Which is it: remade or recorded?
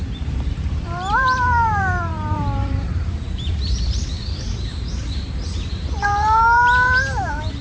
remade